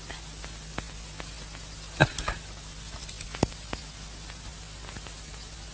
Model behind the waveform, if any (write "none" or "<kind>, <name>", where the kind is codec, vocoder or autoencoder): none